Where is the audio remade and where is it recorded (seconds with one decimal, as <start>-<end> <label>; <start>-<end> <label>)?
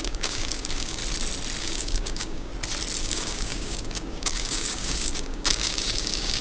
0.0-1.0 remade; 1.0-1.6 recorded; 1.6-2.5 remade; 2.5-3.0 recorded; 3.0-6.4 remade